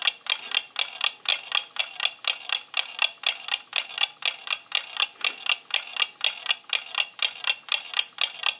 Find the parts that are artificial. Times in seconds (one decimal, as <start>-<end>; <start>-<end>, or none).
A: none